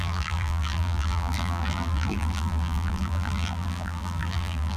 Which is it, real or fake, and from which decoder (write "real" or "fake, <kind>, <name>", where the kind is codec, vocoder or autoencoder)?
fake, vocoder, BigVGAN v2